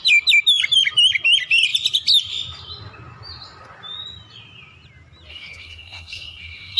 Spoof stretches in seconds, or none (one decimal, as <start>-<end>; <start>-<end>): 5.3-6.8